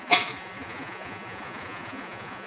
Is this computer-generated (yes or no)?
yes